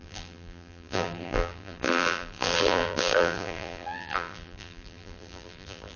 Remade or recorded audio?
remade